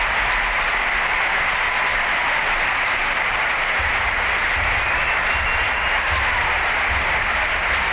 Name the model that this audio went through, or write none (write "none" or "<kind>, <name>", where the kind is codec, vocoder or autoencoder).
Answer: none